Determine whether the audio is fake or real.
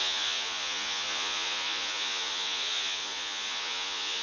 fake